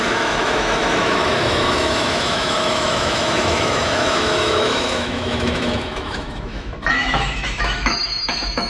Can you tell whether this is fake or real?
fake